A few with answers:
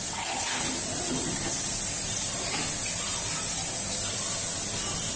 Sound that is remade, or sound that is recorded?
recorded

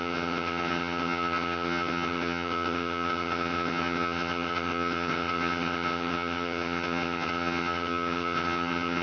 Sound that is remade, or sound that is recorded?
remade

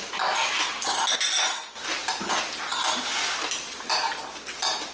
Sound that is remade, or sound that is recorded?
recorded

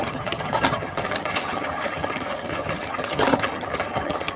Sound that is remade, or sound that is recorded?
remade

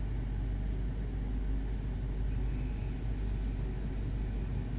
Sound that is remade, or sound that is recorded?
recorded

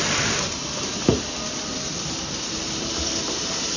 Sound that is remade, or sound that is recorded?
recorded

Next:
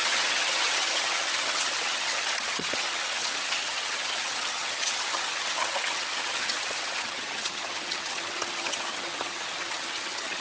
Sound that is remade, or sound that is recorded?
remade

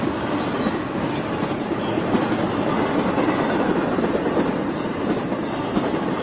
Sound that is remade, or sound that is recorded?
recorded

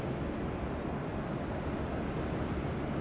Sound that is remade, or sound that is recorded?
recorded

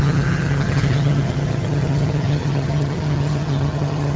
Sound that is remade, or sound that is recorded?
remade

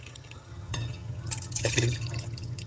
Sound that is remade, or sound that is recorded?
remade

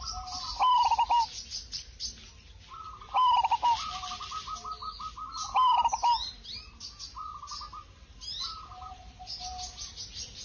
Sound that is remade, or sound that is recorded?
recorded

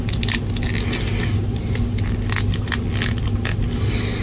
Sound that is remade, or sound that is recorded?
recorded